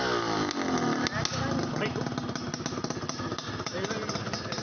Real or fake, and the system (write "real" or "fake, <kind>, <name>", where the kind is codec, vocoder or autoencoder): real